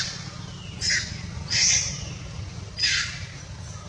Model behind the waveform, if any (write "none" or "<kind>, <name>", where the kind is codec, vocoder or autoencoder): none